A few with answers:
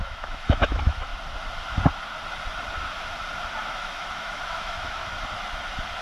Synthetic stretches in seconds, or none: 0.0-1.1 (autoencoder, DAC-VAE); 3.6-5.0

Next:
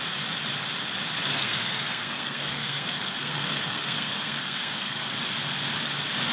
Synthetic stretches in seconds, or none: 1.3-5.1 (codec, SNAC)

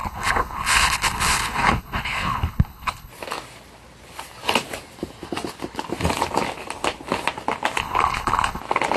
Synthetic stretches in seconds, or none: 0.0-3.1 (codec, HILCodec); 7.8-8.6

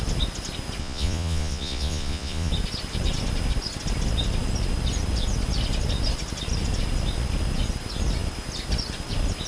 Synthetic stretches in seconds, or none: 0.8-2.5 (vocoder, Vocos)

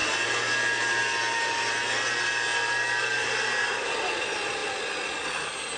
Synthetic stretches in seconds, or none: 0.0-0.9 (vocoder, BigVGAN v2); 2.5-3.6

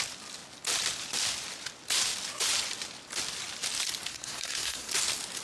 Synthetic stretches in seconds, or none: 4.1-4.9 (codec, SNAC)

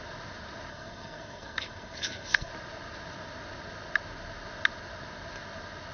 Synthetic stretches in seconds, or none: 0.7-2.5 (codec, SNAC)